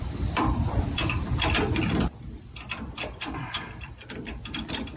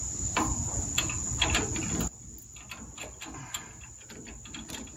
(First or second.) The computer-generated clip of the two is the first